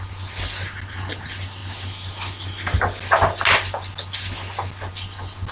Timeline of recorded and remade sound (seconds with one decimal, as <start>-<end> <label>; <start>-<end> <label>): 0.0-5.5 recorded